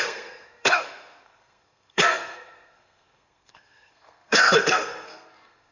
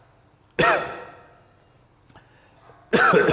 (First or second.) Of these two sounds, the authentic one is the second